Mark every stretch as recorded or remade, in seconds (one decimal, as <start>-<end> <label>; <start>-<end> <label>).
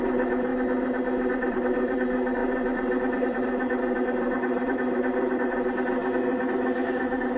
0.0-0.5 remade; 0.5-1.5 recorded; 1.5-2.4 remade; 2.4-3.2 recorded; 3.2-6.0 remade; 6.0-7.0 recorded; 7.0-7.4 remade